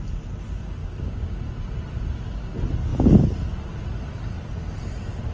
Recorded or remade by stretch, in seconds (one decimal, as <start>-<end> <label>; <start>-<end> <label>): 0.0-0.8 recorded; 0.8-1.4 remade; 1.4-5.3 recorded